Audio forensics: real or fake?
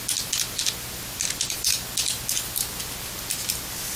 real